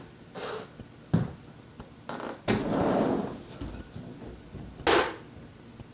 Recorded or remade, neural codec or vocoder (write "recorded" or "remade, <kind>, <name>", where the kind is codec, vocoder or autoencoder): recorded